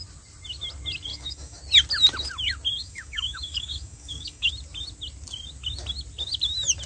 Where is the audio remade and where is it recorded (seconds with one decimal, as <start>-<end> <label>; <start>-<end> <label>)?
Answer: 0.0-1.1 recorded; 1.1-1.6 remade; 1.6-2.8 recorded; 2.8-4.5 remade; 4.5-6.9 recorded